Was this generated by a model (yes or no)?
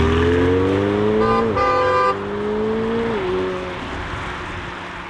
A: no